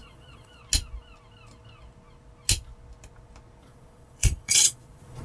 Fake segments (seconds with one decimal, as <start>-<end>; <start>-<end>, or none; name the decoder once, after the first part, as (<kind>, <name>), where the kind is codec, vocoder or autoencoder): 0.0-0.6 (vocoder, Vocos); 3.6-5.2